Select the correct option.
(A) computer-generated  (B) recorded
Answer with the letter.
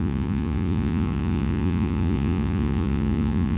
A